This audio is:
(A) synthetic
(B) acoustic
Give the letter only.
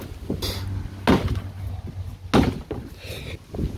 B